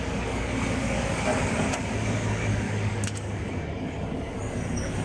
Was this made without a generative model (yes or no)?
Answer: no